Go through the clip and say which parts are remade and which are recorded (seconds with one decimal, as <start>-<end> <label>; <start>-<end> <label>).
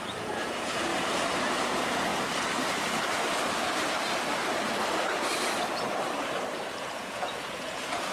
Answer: 0.0-0.9 remade; 0.9-1.6 recorded; 1.6-2.1 remade; 2.1-7.0 recorded; 7.0-8.1 remade